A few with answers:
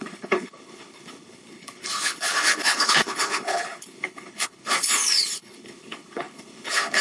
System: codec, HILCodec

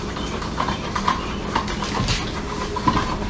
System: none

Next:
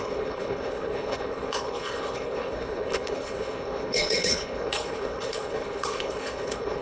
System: codec, HILCodec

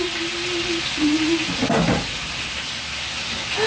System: none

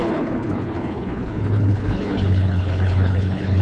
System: codec, HILCodec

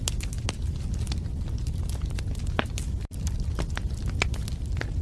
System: none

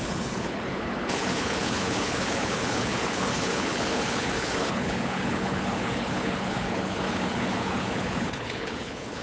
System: codec, HILCodec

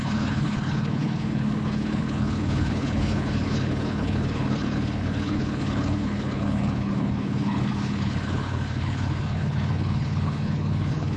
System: codec, HILCodec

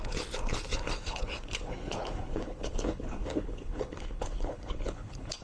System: codec, HILCodec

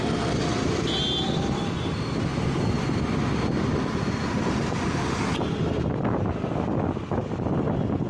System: none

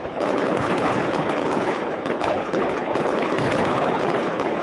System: codec, HILCodec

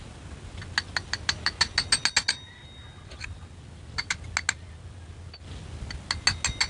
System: none